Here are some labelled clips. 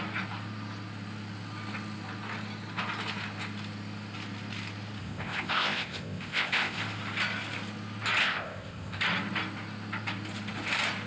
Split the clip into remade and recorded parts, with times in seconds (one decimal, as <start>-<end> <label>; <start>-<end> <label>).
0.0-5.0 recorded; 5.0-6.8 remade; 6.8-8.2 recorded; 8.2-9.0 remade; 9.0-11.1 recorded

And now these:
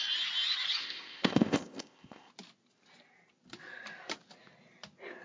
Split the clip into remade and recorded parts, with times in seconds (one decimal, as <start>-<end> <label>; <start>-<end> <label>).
0.0-0.8 recorded; 0.8-2.3 remade; 2.3-5.2 recorded

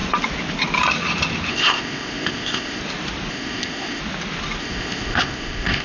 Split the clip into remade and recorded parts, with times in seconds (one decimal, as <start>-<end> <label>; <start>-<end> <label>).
0.0-1.5 recorded; 1.5-2.8 remade; 2.8-3.3 recorded; 3.3-4.0 remade; 4.0-4.6 recorded; 4.6-5.8 remade